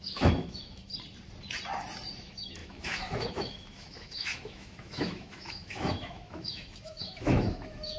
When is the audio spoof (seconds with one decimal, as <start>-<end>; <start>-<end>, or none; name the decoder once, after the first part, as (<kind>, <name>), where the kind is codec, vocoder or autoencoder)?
0.0-0.9 (autoencoder, DAC-VAE); 2.2-8.0